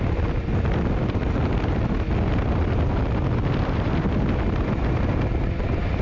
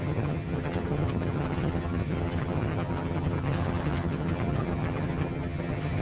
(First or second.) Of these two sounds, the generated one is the second